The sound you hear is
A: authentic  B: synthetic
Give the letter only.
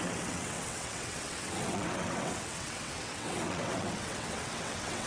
B